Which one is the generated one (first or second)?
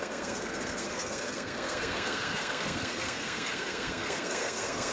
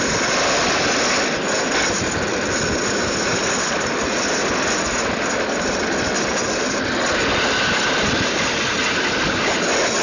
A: first